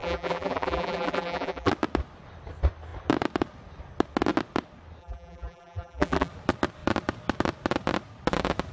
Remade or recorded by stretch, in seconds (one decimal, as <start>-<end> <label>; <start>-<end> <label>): 0.0-1.7 remade; 1.7-5.0 recorded; 5.0-6.3 remade; 6.3-8.7 recorded